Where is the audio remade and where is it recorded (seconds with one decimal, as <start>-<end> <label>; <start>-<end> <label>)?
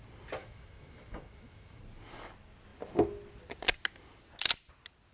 0.0-0.4 recorded; 0.4-1.8 remade; 1.8-5.1 recorded